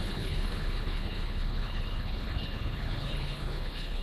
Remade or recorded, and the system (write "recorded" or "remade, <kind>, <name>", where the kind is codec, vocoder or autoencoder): remade, codec, HILCodec